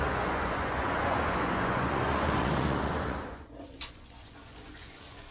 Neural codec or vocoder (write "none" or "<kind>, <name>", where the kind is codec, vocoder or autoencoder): vocoder, Vocos